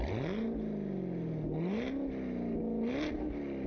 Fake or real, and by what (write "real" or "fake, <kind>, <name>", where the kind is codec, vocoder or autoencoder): real